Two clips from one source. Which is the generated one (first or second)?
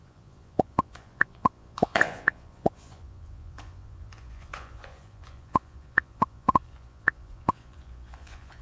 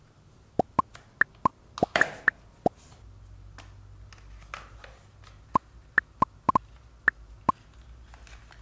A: first